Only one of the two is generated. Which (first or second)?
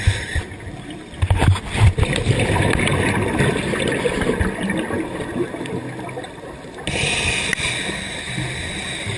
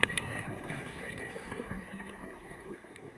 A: second